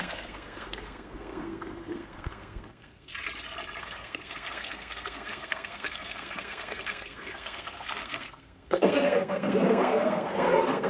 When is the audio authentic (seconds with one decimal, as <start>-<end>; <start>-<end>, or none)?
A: 3.1-3.8